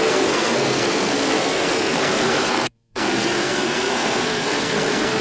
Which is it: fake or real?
fake